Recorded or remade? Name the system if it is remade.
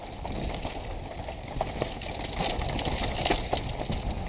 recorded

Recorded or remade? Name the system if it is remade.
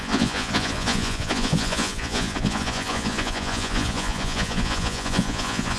remade, vocoder, Vocos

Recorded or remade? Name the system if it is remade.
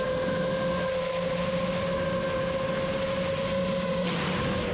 recorded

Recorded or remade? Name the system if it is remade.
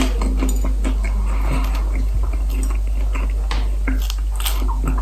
recorded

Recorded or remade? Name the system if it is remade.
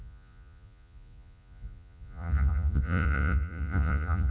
remade, vocoder, Vocos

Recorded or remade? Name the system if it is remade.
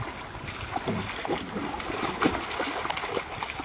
recorded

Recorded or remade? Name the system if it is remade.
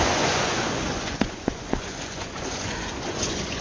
remade, vocoder, Vocos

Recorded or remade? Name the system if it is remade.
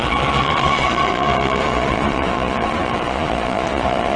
remade, vocoder, Vocos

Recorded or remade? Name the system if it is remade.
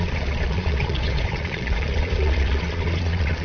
remade, vocoder, Vocos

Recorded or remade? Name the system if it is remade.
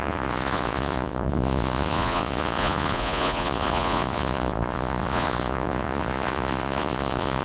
remade, vocoder, Vocos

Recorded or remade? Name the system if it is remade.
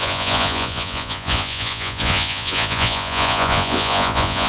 remade, vocoder, Vocos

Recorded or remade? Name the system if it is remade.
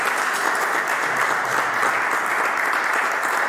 recorded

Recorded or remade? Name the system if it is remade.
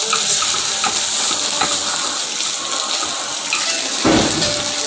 recorded